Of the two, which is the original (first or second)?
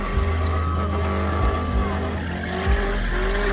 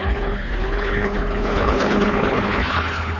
first